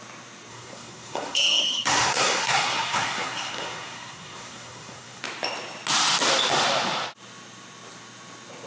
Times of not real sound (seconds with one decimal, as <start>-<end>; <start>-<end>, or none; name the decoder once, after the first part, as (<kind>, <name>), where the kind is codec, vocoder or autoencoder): 0.5-5.2 (codec, SNAC)